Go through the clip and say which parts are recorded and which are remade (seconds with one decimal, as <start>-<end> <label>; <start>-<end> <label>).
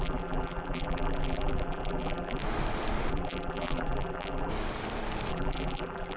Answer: 0.0-2.4 remade; 2.4-3.1 recorded; 3.1-4.5 remade; 4.5-5.3 recorded; 5.3-6.2 remade